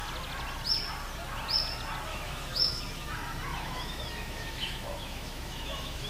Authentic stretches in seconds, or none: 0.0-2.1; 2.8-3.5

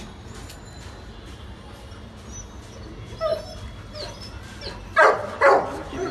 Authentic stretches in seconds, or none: 0.0-6.1

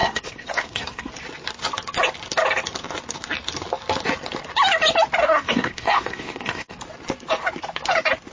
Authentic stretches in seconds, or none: 1.1-5.2; 6.8-8.3